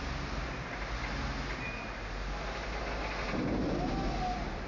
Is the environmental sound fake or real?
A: real